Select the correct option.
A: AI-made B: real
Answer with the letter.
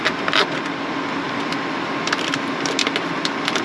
B